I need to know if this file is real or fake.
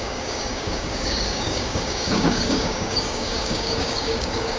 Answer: fake